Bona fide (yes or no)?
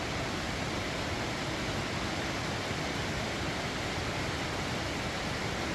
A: yes